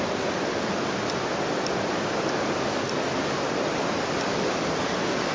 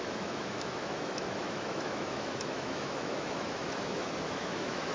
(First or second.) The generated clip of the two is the second